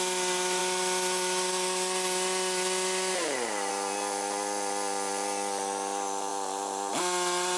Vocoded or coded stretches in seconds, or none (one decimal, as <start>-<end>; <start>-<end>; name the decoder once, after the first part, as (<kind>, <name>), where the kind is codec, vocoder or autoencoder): none